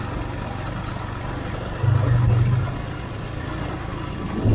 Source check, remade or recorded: recorded